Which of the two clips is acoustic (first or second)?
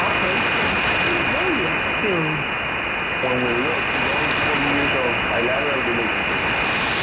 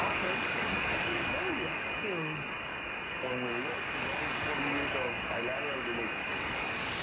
first